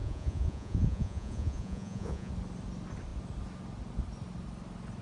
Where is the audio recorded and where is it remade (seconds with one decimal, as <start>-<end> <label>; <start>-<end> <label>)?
0.0-2.3 remade; 2.3-5.0 recorded